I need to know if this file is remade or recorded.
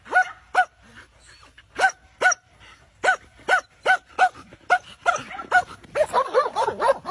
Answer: recorded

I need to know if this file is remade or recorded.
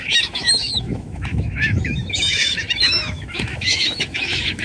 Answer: remade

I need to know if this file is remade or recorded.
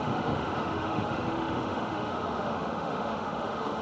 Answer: remade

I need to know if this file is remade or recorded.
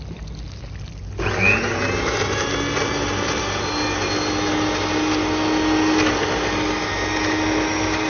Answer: recorded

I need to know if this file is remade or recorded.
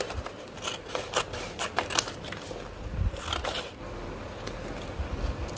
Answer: recorded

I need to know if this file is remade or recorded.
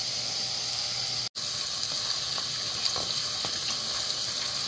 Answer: recorded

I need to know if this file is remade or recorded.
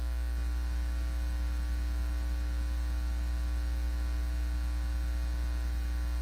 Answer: recorded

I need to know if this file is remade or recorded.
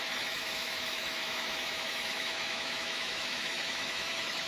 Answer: remade